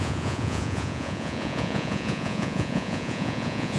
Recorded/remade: remade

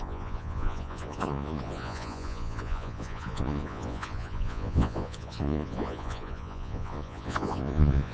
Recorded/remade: remade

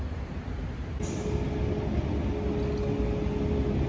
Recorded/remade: recorded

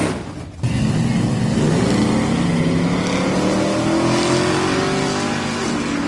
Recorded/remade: recorded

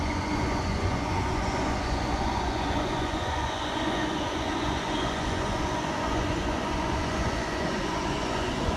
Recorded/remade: remade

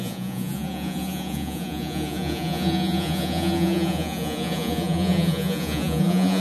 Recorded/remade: remade